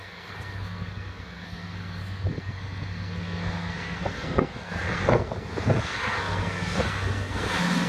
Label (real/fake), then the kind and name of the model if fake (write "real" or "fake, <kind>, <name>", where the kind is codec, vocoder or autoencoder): fake, codec, SNAC